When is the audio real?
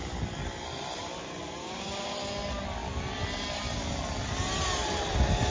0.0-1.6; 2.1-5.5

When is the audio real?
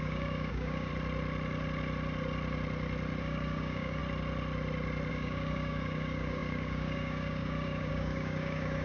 0.9-3.2; 4.0-5.1